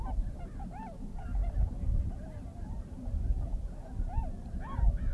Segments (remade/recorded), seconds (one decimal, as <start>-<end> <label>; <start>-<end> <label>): 0.0-3.5 remade; 3.5-4.2 recorded; 4.2-5.1 remade